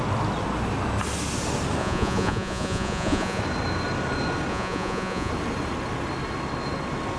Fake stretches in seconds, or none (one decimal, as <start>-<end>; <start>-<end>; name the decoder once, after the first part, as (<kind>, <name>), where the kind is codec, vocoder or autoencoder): 1.8-3.4 (vocoder, Vocos); 4.5-5.3